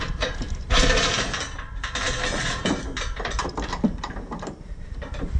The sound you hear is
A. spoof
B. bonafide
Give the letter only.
A